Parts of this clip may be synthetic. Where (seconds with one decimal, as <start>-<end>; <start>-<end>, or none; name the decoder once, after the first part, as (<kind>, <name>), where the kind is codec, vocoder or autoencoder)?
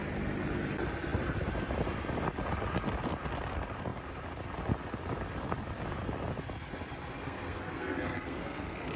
7.2-9.0 (codec, SNAC)